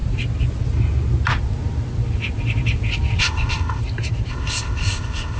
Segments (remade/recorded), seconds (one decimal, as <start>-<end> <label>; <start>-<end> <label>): 0.0-3.2 recorded; 3.2-3.8 remade; 3.8-4.3 recorded; 4.3-5.4 remade